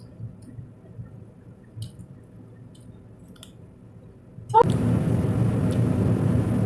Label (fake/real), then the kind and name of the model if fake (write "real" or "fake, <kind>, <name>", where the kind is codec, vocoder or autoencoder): real